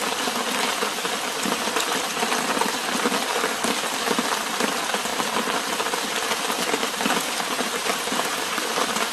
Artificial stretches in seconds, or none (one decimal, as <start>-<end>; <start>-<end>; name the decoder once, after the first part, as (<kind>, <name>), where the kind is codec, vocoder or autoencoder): none

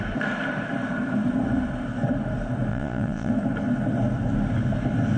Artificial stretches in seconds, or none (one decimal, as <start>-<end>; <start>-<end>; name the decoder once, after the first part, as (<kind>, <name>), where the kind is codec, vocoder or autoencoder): 2.7-3.3 (vocoder, Vocos)

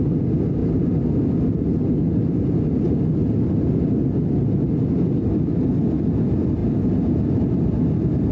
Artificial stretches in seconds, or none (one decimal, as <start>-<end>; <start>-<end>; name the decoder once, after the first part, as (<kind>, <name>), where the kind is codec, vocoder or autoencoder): none

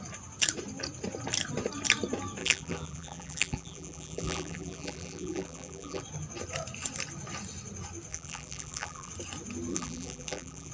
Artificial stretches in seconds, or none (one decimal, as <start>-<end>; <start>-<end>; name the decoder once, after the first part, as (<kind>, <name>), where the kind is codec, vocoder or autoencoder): 2.4-6.0 (vocoder, BigVGAN v2); 8.1-9.1; 9.7-10.7

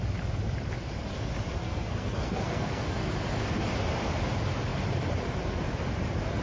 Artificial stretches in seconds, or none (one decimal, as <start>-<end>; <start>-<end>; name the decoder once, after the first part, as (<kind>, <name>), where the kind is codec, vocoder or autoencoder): 1.6-3.1 (codec, SNAC)